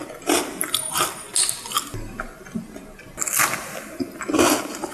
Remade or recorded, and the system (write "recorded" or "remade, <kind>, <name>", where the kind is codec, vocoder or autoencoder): recorded